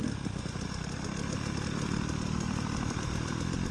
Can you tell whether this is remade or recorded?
remade